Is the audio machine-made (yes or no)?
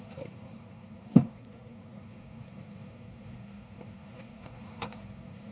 yes